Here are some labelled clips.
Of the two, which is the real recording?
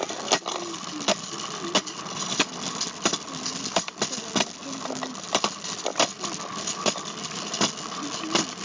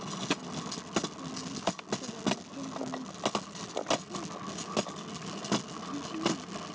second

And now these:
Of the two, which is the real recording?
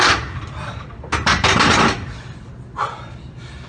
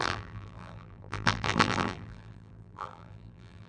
first